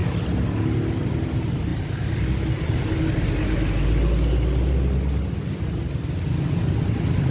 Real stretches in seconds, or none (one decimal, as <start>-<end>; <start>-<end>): 0.0-7.3